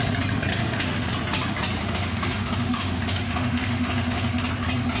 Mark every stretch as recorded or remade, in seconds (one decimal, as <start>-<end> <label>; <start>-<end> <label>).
0.0-0.5 recorded; 0.5-1.1 remade; 1.1-1.8 recorded; 1.8-4.5 remade; 4.5-5.0 recorded

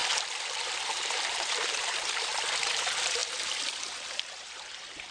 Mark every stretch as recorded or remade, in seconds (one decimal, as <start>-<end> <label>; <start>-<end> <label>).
0.0-0.6 recorded; 0.6-3.2 remade; 3.2-4.1 recorded; 4.1-5.1 remade

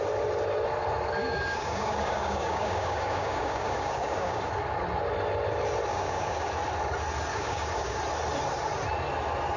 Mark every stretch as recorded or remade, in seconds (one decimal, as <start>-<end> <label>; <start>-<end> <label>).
0.0-1.2 recorded; 1.2-4.5 remade; 4.5-5.9 recorded; 5.9-6.5 remade; 6.5-7.3 recorded; 7.3-8.0 remade; 8.0-9.6 recorded

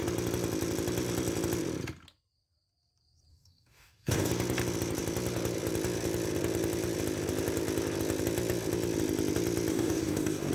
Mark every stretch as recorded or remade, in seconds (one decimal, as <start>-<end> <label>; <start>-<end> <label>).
0.0-3.3 recorded; 3.3-4.3 remade; 4.3-9.7 recorded; 9.7-10.5 remade